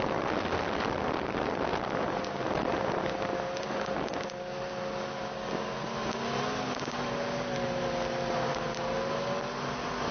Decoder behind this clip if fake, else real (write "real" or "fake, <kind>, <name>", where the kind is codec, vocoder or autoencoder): real